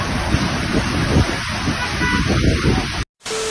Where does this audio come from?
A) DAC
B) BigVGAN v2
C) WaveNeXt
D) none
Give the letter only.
D